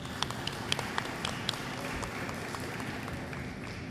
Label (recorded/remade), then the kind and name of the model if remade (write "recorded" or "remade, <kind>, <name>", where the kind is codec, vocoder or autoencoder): recorded